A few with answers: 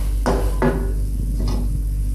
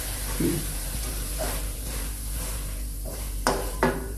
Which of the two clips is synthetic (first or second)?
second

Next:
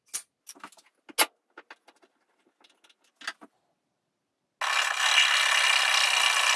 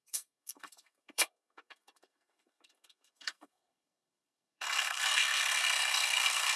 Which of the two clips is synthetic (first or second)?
second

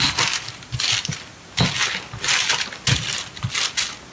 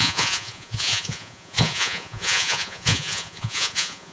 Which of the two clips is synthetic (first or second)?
second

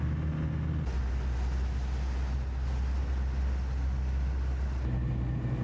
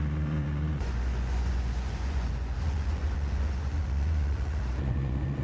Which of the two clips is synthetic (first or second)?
second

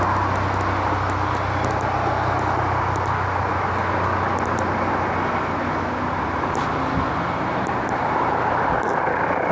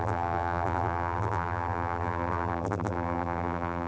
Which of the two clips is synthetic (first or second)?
second